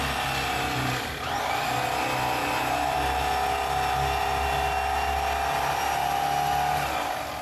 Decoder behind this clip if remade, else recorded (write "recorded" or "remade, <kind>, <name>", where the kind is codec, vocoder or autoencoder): recorded